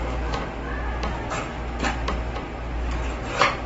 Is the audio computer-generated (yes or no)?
no